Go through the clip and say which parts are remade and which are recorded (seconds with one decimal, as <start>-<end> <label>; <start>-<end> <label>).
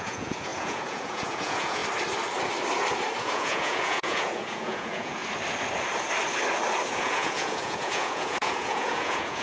0.0-1.8 remade; 1.8-3.2 recorded; 3.2-5.2 remade; 5.2-6.9 recorded; 6.9-9.4 remade